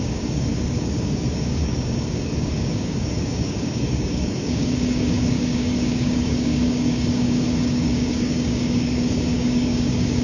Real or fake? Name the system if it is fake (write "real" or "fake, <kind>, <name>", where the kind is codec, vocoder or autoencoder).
fake, codec, DAC